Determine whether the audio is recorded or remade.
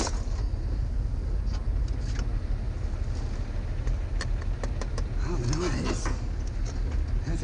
recorded